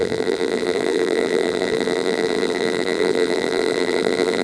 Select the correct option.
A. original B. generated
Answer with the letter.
B